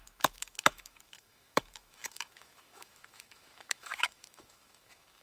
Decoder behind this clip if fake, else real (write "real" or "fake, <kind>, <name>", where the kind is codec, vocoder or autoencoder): fake, autoencoder, DAC-VAE